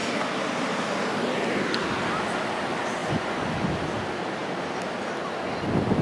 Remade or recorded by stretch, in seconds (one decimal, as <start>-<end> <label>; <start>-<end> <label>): 0.0-3.0 recorded; 3.0-3.6 remade; 3.6-6.0 recorded